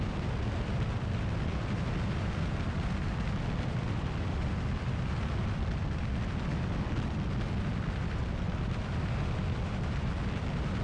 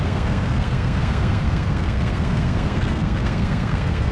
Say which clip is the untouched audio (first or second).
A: first